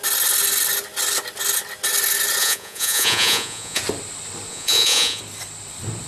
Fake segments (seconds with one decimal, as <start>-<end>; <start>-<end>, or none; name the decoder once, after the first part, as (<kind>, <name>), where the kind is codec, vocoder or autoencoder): 2.4-3.8 (vocoder, Vocos); 4.5-5.2

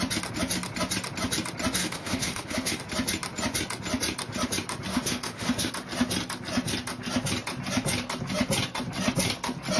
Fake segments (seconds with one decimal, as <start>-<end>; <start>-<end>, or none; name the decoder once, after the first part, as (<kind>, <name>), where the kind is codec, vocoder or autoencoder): 1.8-2.8 (autoencoder, DAC-VAE); 4.9-5.7

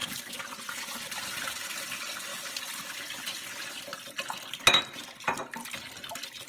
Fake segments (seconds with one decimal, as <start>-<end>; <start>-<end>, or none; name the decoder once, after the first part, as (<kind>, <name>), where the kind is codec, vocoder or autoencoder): none

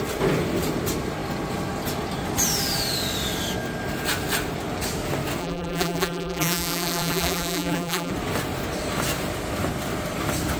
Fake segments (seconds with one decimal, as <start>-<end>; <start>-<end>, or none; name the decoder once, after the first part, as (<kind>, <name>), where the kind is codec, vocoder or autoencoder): 5.4-8.1 (vocoder, BigVGAN v2)

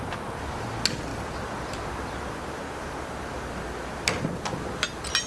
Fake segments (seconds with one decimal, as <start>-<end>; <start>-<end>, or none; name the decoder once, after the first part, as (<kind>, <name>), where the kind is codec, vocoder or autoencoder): none

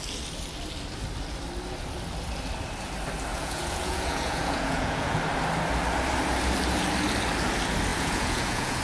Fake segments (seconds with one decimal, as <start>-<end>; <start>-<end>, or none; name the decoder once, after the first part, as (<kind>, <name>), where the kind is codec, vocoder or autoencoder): 3.3-5.2 (vocoder, Vocos); 7.9-8.8